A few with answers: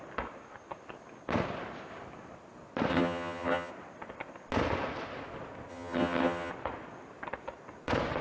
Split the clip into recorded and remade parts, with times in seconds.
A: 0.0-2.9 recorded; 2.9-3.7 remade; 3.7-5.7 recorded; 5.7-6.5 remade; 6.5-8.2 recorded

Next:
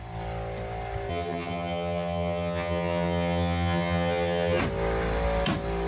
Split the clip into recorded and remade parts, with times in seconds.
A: 0.0-1.1 recorded; 1.1-4.6 remade; 4.6-5.9 recorded